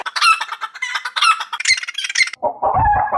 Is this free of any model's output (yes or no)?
no